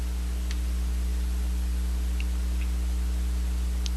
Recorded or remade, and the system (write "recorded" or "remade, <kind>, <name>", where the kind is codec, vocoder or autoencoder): recorded